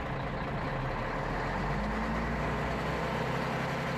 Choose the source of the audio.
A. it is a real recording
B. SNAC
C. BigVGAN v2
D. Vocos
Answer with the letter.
A